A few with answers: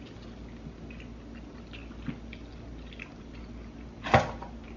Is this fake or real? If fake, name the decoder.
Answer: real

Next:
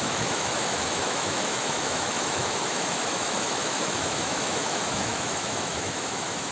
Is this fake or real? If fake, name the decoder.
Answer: fake, autoencoder, DAC-VAE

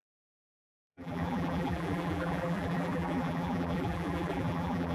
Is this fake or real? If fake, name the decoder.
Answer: fake, vocoder, BigVGAN v2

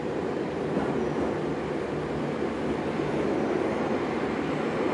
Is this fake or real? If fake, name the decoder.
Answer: real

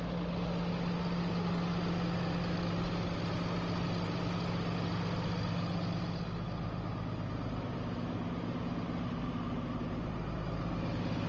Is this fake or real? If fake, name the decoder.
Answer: real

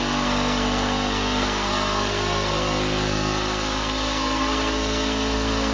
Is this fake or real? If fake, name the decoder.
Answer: fake, codec, SNAC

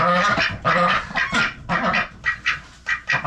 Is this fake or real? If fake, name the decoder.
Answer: real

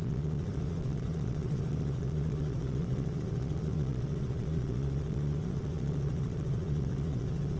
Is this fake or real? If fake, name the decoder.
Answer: fake, vocoder, Vocos